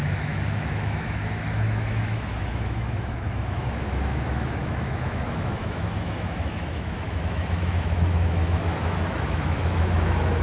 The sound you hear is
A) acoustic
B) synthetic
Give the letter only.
B